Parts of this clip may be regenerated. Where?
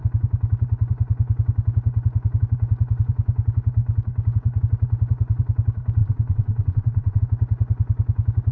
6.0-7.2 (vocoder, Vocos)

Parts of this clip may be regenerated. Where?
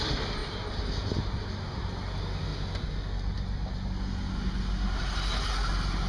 none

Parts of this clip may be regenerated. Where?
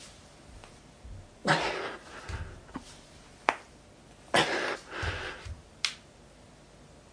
none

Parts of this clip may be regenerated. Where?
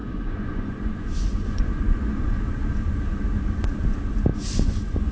0.0-2.4 (vocoder, Vocos); 4.3-5.1